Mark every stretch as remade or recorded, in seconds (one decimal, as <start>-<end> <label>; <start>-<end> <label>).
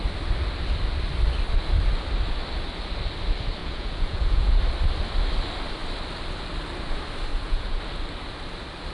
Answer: 0.0-3.6 recorded; 3.6-4.6 remade; 4.6-7.3 recorded; 7.3-7.8 remade; 7.8-8.9 recorded